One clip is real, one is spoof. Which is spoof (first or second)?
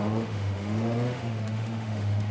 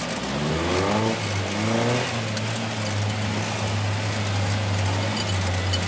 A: first